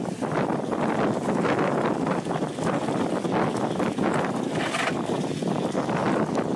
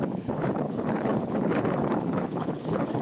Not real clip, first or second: second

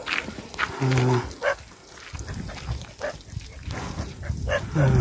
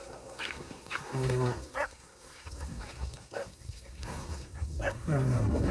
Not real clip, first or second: second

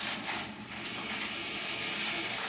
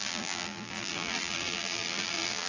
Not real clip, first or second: second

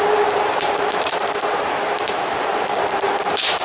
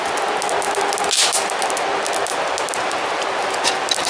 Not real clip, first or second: first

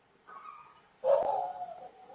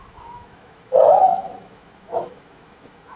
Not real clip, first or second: second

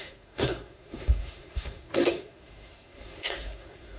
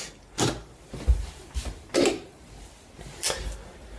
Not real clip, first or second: first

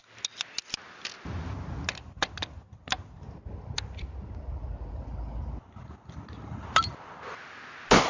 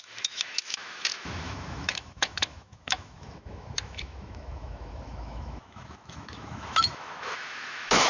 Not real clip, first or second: second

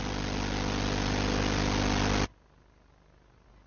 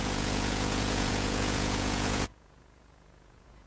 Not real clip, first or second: second